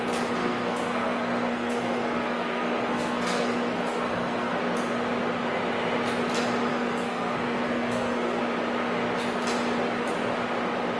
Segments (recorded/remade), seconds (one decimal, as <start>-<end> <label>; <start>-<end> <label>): 0.0-0.4 recorded; 0.4-4.6 remade; 4.6-6.7 recorded; 6.7-8.4 remade; 8.4-11.0 recorded